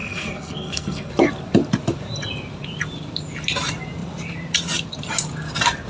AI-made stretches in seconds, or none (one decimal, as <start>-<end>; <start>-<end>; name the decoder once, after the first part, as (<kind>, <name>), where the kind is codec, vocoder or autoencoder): 0.0-1.1 (codec, SNAC)